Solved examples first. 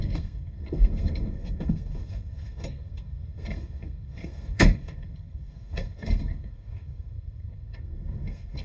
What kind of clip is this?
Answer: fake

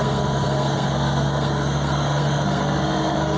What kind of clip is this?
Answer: fake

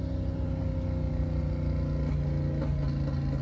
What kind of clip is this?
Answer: real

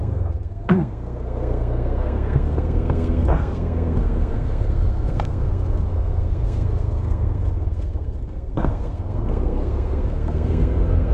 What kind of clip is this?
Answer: fake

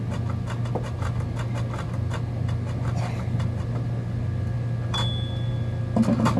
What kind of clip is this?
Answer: real